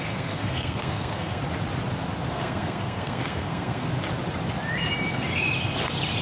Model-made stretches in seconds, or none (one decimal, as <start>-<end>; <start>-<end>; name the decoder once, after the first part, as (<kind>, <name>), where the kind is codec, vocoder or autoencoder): 0.0-1.4 (codec, SNAC); 2.3-3.9